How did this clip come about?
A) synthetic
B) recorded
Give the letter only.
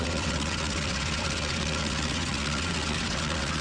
A